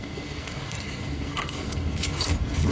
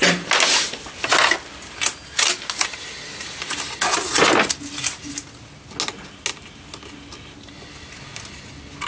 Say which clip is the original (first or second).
second